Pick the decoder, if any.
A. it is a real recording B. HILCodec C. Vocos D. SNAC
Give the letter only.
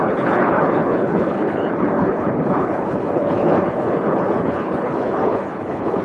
B